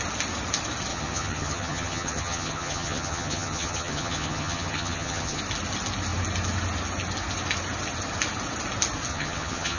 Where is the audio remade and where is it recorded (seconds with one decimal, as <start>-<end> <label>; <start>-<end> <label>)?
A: 0.0-0.9 recorded; 0.9-5.4 remade; 5.4-9.1 recorded; 9.1-9.8 remade